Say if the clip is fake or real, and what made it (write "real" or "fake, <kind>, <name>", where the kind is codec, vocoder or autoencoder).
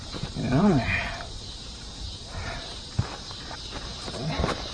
fake, vocoder, BigVGAN v2